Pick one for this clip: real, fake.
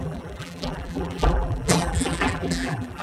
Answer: fake